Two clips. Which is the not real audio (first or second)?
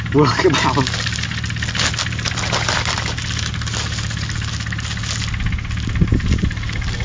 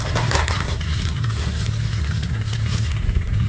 second